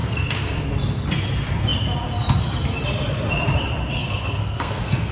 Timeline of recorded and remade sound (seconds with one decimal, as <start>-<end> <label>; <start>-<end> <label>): 0.0-0.7 remade; 0.7-4.0 recorded; 4.0-5.1 remade